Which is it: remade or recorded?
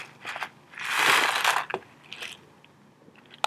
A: recorded